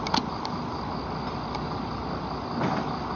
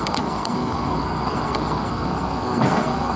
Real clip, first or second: first